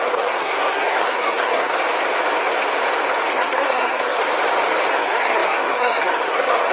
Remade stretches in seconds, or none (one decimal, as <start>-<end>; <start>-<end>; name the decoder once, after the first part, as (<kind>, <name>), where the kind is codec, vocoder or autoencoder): 0.0-1.7 (codec, SNAC); 3.3-4.2; 4.9-6.7